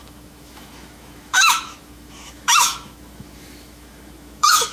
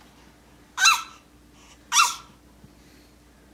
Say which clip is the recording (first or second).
second